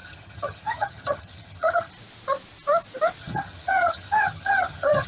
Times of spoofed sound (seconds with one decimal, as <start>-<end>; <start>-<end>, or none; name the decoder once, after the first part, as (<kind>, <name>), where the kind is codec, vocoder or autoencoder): 0.0-1.9 (vocoder, HiFi-GAN); 3.2-5.1

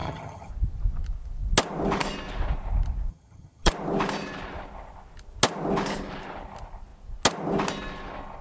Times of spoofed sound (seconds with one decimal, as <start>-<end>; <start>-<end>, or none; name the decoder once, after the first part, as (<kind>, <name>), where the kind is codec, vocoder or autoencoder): 0.0-0.5 (vocoder, HiFi-GAN); 3.1-3.7

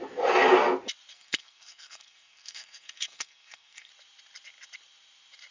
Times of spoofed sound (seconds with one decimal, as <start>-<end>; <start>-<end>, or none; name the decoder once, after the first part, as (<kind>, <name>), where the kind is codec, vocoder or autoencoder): 1.1-3.9 (codec, SNAC)

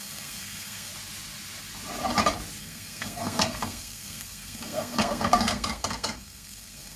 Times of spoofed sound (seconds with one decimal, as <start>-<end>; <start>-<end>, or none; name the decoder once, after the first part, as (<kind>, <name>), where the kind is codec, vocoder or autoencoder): 0.0-0.9 (codec, SNAC); 2.6-7.0

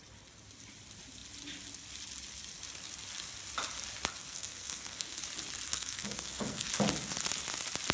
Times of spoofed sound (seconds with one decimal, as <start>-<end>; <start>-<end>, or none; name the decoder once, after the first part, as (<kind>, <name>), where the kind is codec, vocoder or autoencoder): 4.2-5.2 (codec, SNAC); 5.7-6.7

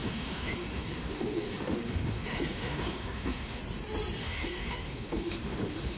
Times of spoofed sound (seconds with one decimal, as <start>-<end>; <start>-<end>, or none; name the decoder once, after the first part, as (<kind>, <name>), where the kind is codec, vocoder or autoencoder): 0.0-3.6 (autoencoder, DAC-VAE); 4.2-6.0